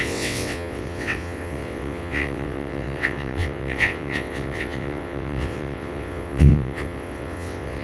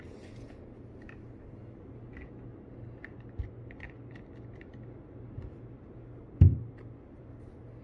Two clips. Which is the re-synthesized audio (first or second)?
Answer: first